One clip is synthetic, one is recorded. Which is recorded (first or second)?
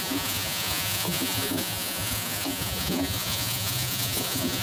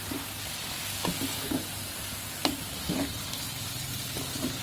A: second